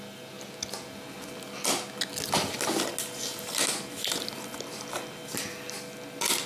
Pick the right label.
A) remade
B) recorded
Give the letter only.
B